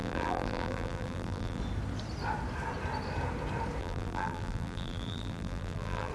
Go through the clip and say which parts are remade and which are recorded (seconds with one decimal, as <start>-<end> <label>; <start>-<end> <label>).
0.0-1.6 remade; 1.6-3.8 recorded; 3.8-6.1 remade